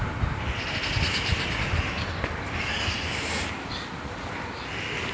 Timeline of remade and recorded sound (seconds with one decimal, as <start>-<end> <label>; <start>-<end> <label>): 0.0-1.3 recorded; 1.3-4.3 remade; 4.3-5.1 recorded